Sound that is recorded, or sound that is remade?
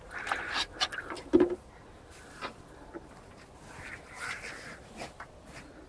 recorded